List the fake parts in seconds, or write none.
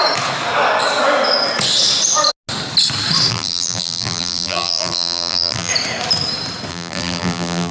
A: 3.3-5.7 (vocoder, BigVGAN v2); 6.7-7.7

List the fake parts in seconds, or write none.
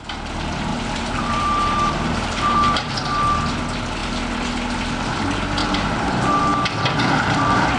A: 0.7-2.9 (vocoder, BigVGAN v2); 5.6-6.4